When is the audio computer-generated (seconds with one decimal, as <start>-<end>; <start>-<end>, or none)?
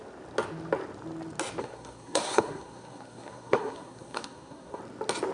1.6-4.8